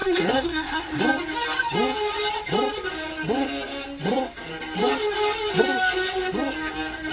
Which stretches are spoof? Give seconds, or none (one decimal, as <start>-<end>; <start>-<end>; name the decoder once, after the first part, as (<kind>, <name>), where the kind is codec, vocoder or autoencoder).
0.0-1.0 (codec, SNAC)